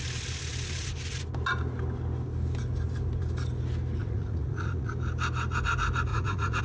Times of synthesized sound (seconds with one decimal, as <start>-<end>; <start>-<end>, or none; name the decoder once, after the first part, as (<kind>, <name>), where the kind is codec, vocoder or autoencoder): 4.0-4.9 (vocoder, Vocos); 6.1-6.6